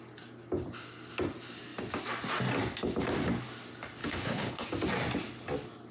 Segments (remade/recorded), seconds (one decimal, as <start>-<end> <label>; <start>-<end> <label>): 0.0-4.0 recorded; 4.0-4.7 remade; 4.7-5.9 recorded